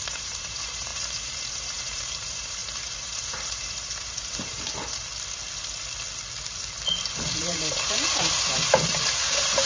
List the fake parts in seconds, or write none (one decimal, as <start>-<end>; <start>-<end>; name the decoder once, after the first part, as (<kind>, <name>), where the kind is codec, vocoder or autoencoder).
0.0-5.1 (vocoder, BigVGAN v2); 7.4-9.7